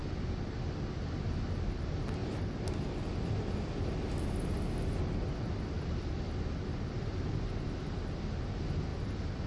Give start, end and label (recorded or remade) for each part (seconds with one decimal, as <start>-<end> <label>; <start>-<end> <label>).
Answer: 0.0-9.5 recorded